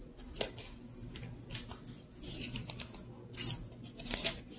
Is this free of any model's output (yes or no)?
yes